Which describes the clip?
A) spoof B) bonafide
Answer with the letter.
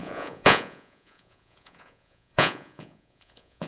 A